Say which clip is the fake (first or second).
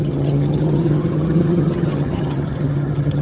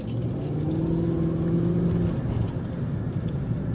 first